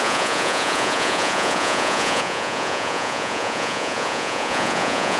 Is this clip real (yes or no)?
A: no